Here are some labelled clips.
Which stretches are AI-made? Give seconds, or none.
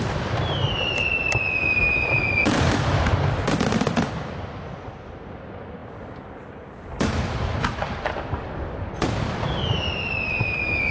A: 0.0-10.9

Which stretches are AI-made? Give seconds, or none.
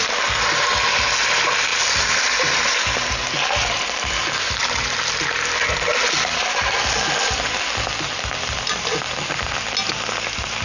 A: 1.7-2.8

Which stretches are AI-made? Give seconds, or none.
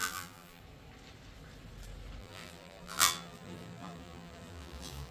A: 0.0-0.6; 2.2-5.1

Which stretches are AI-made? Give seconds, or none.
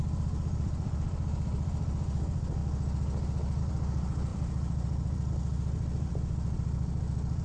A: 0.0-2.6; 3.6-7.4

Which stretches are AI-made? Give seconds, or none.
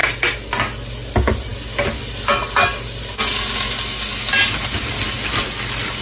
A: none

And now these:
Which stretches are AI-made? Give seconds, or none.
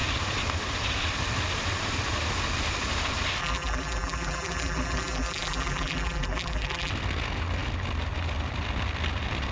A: 3.4-6.9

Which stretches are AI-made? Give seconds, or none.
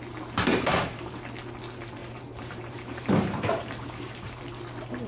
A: 0.5-1.1; 2.0-4.4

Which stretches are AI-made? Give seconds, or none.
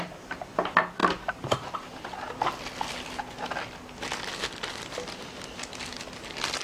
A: none